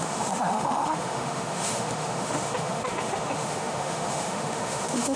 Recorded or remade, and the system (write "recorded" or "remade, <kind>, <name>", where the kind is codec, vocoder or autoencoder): remade, autoencoder, DAC-VAE